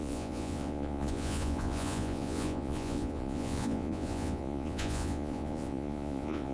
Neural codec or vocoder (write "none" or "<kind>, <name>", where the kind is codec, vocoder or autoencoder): vocoder, Vocos